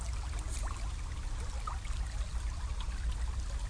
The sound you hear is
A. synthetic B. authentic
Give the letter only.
B